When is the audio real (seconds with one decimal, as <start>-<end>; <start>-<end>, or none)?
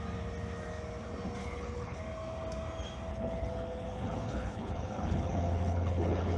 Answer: 0.0-1.4; 2.0-3.1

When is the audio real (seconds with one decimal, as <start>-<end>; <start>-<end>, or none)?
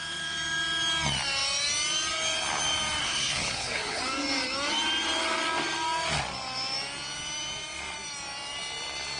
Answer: 0.0-3.0; 4.0-9.2